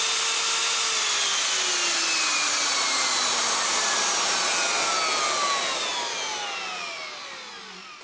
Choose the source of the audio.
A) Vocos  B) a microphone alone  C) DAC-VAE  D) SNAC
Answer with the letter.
B